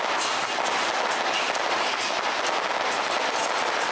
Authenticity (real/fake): real